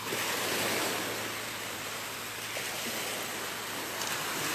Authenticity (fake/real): real